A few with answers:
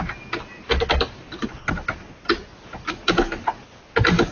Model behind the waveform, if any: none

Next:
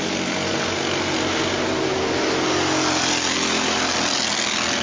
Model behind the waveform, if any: none